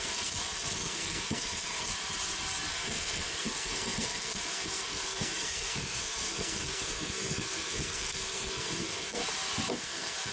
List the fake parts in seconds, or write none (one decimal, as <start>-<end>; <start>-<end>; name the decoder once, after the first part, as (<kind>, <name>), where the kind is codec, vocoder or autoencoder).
0.0-1.9 (codec, SNAC); 2.7-9.2; 9.7-10.3